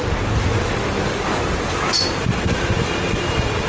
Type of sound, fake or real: real